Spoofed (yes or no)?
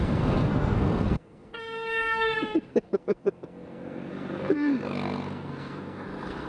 yes